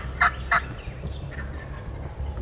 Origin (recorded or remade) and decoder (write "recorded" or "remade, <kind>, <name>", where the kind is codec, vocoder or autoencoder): recorded